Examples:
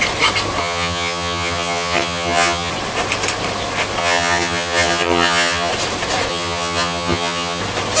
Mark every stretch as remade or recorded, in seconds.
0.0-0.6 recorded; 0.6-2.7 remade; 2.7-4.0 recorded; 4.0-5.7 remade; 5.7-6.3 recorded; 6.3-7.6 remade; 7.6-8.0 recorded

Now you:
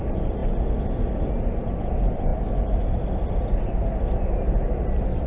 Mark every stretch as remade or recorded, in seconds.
0.0-5.3 recorded

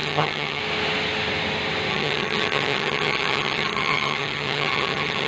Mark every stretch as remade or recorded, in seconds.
0.0-0.6 remade; 0.6-1.9 recorded; 1.9-5.3 remade

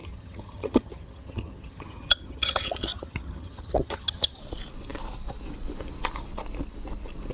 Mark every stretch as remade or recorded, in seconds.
0.0-4.4 remade; 4.4-7.3 recorded

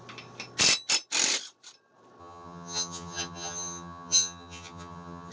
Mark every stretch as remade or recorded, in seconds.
0.0-2.2 recorded; 2.2-5.3 remade

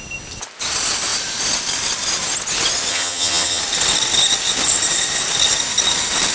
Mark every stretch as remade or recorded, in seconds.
0.0-2.9 recorded; 2.9-3.6 remade; 3.6-6.3 recorded

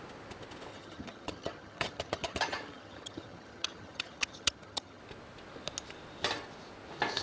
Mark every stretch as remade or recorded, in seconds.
0.0-0.7 recorded; 0.7-5.0 remade; 5.0-7.2 recorded